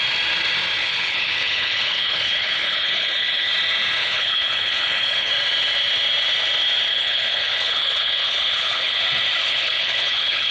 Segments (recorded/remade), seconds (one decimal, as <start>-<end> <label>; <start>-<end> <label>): 0.0-0.8 recorded; 0.8-3.5 remade; 3.5-4.0 recorded; 4.0-5.3 remade; 5.3-6.9 recorded; 6.9-9.0 remade; 9.0-9.4 recorded; 9.4-10.5 remade